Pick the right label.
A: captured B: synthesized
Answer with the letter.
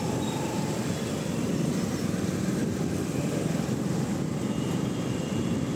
A